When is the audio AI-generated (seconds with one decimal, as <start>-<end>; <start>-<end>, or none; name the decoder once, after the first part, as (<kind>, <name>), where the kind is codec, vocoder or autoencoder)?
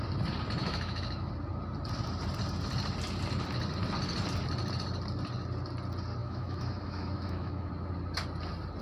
0.6-1.3 (autoencoder, DAC-VAE); 6.2-7.7